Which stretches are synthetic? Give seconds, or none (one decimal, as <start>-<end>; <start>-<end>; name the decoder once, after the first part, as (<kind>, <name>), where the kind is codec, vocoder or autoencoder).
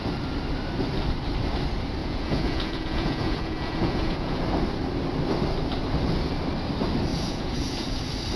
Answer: 2.0-4.4 (vocoder, Vocos); 7.1-8.0